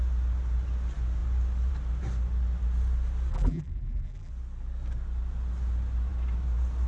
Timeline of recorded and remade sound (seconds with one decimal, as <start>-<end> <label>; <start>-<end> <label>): 0.0-3.3 recorded; 3.3-4.3 remade; 4.3-6.9 recorded